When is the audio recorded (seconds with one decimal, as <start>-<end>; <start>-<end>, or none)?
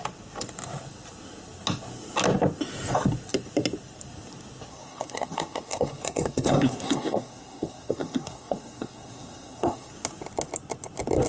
0.0-4.7; 9.9-11.3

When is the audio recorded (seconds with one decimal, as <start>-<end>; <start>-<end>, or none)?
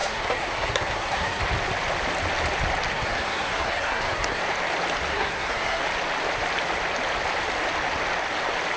1.4-2.9; 4.4-5.1; 5.8-8.8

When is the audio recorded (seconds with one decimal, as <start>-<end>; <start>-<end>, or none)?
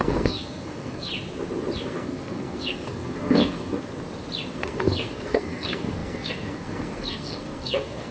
1.1-1.8; 3.9-4.5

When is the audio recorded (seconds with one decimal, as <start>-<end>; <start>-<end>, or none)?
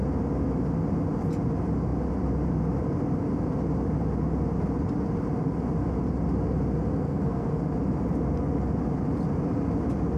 0.0-6.9; 7.6-10.2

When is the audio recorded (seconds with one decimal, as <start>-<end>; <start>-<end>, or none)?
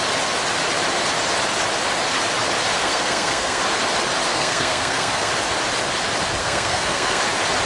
0.0-2.8; 3.6-4.3; 5.3-6.4; 7.2-7.7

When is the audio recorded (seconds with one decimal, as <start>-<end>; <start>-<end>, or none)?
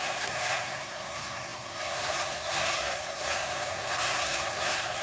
none